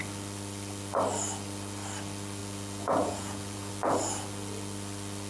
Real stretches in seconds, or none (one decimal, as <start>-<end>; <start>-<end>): 0.0-2.4; 3.7-5.3